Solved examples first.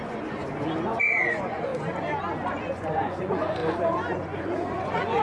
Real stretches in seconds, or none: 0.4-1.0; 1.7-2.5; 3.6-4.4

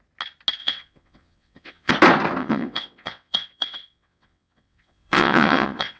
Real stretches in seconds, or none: 0.0-0.6; 1.9-2.4

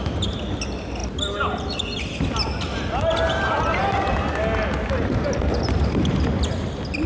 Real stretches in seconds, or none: 0.0-7.1

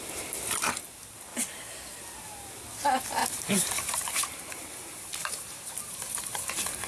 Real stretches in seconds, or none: 0.0-3.2

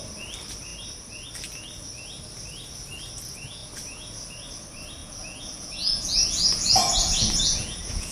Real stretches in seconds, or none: 0.0-5.0

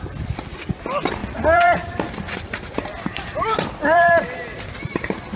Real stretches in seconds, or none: 0.0-1.2; 4.1-5.4

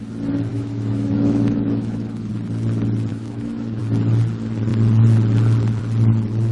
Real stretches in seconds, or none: 0.0-0.5; 2.3-3.1; 3.8-6.5

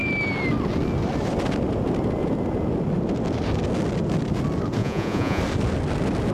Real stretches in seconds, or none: 0.0-4.8; 5.4-6.3